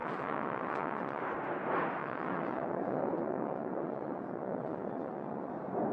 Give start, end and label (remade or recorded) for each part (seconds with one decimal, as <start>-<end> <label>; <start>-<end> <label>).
0.0-1.2 remade; 1.2-2.0 recorded; 2.0-5.5 remade; 5.5-5.9 recorded